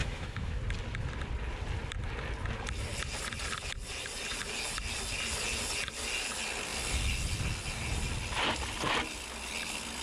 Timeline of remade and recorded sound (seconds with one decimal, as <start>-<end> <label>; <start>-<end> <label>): 0.0-0.6 remade; 0.6-10.0 recorded